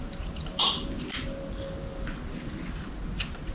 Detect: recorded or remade recorded